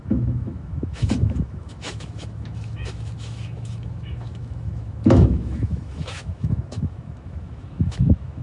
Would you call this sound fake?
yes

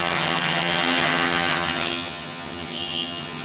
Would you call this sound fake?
yes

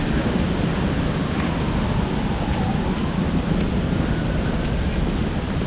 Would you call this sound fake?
no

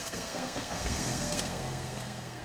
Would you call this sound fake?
yes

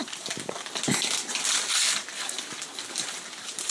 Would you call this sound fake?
no